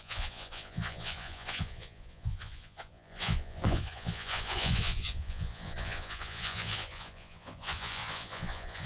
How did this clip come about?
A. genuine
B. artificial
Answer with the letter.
B